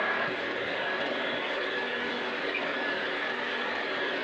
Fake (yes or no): yes